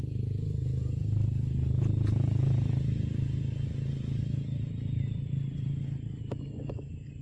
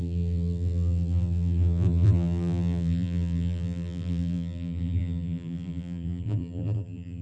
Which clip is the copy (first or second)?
second